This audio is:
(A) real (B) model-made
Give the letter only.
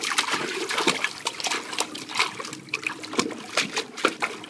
A